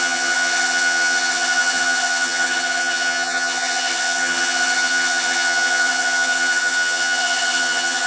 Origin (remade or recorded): remade